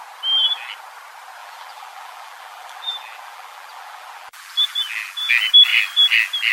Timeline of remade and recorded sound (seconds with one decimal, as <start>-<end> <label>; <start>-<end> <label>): 0.0-1.4 recorded; 1.4-5.3 remade; 5.3-6.5 recorded